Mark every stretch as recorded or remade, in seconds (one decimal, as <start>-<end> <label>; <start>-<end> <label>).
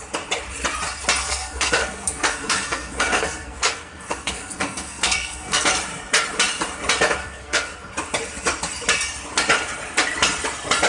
0.0-1.2 recorded; 1.2-5.7 remade; 5.7-7.2 recorded; 7.2-7.9 remade; 7.9-10.9 recorded